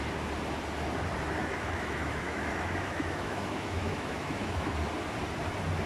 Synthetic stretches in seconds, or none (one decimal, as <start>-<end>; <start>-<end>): 1.4-4.7